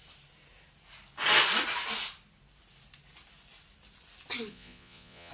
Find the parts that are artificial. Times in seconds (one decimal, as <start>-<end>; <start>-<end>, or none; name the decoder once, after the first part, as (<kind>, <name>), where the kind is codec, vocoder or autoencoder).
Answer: 4.5-5.3 (vocoder, Vocos)